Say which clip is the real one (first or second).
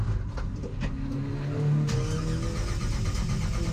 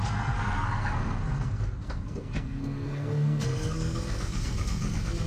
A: first